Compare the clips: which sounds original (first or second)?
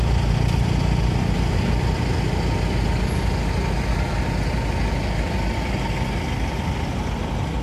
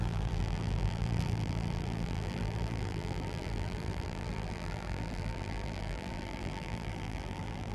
first